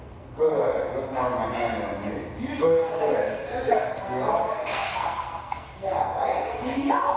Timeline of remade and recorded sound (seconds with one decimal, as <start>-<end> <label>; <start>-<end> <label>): 0.0-0.9 remade; 0.9-2.6 recorded; 2.6-7.2 remade